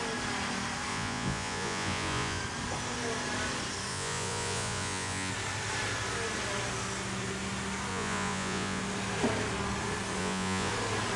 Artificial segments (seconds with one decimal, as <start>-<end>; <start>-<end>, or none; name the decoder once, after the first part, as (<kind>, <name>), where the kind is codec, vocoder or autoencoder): 0.9-2.4 (vocoder, Vocos); 3.9-5.3; 7.9-8.8; 10.2-10.7